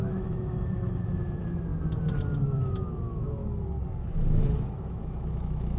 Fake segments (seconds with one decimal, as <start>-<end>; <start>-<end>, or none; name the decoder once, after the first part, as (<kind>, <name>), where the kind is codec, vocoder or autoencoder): 0.0-1.7 (autoencoder, DAC-VAE); 2.4-3.4; 4.8-5.8